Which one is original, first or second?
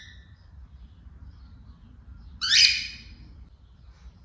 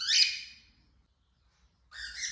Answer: second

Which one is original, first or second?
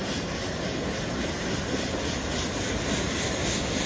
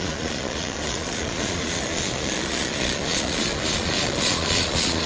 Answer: first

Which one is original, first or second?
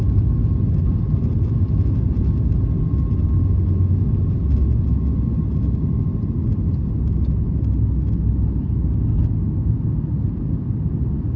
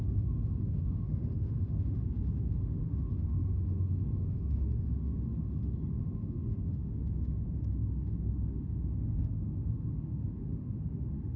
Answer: first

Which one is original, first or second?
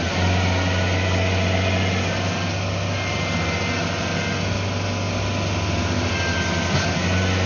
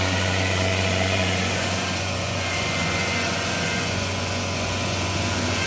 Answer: first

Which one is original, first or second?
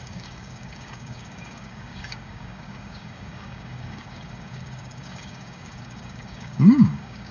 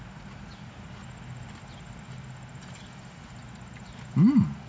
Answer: second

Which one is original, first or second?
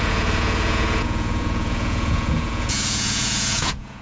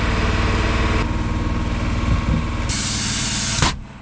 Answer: second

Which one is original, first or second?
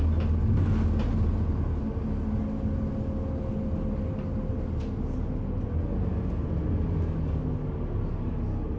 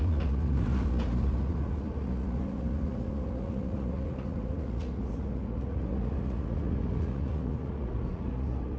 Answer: first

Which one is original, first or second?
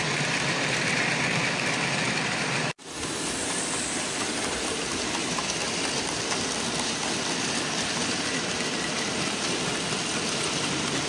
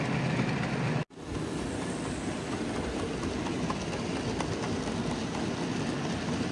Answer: second